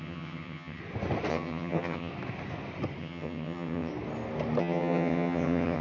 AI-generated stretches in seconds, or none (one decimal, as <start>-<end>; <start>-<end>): 0.0-0.8; 1.3-2.1; 3.0-3.9; 4.6-5.8